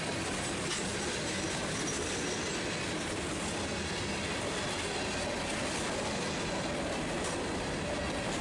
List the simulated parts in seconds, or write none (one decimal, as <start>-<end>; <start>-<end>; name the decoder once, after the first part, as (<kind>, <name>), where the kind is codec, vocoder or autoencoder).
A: none